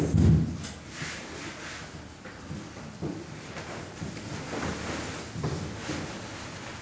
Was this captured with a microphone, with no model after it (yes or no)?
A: yes